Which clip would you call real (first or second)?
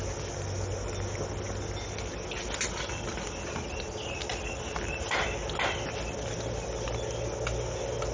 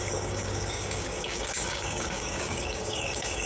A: first